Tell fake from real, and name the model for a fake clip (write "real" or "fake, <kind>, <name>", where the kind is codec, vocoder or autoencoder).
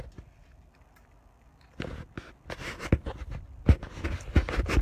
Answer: real